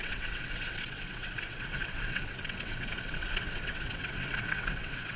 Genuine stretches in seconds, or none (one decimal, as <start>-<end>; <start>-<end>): none